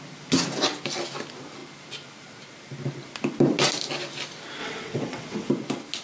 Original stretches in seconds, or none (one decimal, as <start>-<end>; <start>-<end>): 0.0-4.6; 5.5-6.0